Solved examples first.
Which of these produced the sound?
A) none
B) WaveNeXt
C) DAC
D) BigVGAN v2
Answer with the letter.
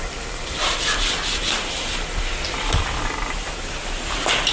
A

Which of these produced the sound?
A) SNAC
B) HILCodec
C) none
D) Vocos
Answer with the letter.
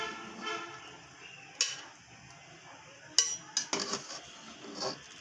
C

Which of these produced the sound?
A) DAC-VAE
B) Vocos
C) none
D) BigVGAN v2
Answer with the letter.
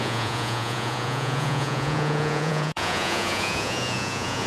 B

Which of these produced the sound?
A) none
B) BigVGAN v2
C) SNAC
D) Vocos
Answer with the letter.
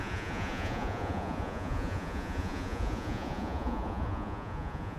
D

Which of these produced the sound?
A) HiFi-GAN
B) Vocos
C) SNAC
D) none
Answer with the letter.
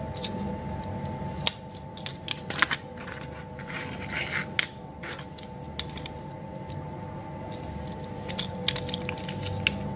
D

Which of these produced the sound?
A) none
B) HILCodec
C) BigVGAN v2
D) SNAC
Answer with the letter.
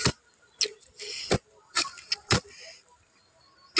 A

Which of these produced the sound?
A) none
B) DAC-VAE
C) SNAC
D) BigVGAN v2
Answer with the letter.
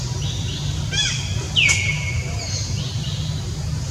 A